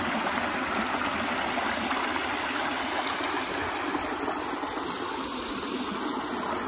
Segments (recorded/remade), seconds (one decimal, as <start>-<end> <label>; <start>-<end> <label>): 0.0-6.7 recorded